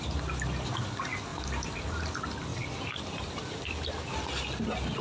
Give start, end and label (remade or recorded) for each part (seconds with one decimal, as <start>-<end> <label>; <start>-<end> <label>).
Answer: 0.0-5.0 recorded